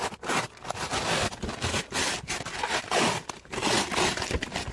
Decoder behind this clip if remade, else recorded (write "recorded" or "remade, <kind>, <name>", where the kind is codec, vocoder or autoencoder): recorded